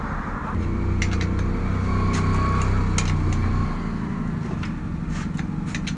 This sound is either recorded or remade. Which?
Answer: recorded